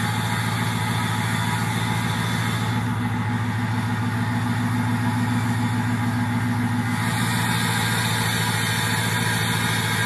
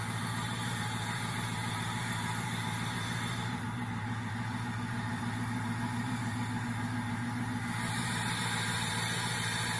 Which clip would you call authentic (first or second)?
first